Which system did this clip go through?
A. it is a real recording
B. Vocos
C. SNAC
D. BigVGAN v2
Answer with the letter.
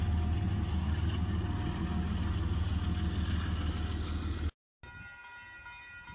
A